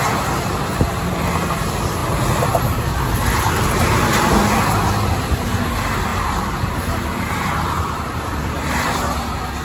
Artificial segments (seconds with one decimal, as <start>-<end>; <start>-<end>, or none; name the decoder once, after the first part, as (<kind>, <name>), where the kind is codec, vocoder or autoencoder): 2.0-3.5 (vocoder, BigVGAN v2); 6.1-8.7